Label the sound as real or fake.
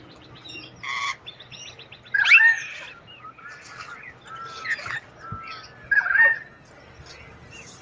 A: real